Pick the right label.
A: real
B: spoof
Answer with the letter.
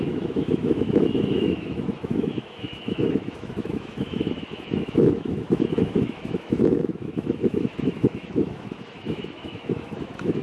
B